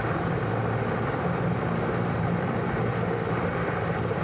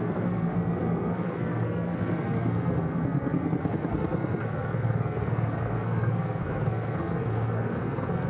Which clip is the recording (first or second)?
first